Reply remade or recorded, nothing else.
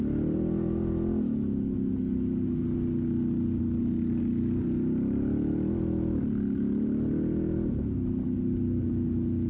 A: recorded